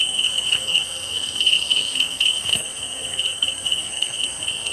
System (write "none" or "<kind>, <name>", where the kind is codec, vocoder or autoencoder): codec, SNAC